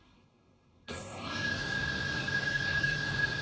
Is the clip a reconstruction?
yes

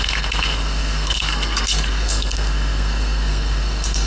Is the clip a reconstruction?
yes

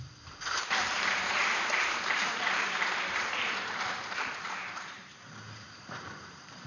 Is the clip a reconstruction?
yes